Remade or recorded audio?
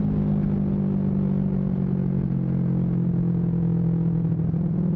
recorded